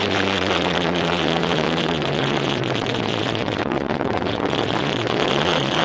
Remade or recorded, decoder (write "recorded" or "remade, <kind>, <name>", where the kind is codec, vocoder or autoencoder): remade, vocoder, WaveNeXt